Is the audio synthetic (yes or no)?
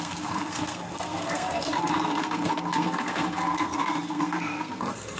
yes